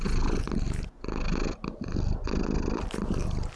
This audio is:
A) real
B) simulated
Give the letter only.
A